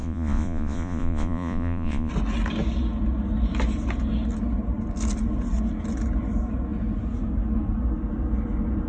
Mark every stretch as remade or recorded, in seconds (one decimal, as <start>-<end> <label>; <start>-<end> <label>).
0.0-2.1 remade; 2.1-8.9 recorded